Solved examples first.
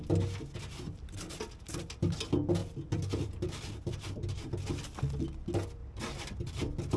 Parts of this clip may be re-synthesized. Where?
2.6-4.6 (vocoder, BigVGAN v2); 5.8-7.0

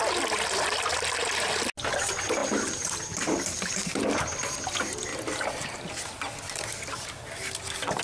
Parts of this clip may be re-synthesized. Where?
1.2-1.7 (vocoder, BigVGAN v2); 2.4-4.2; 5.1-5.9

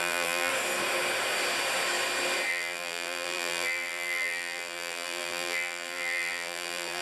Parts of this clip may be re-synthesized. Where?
0.0-0.5 (vocoder, BigVGAN v2); 2.5-7.0